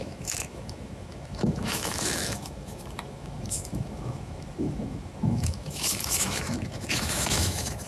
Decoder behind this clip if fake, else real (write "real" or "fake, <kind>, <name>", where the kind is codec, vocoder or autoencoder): fake, autoencoder, DAC-VAE